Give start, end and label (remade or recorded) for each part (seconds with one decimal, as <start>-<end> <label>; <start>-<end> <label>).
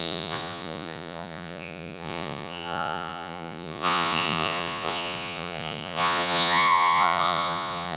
0.0-8.0 remade